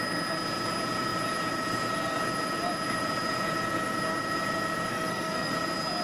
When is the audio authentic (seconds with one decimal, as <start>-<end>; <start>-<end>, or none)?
0.0-4.9; 5.5-6.0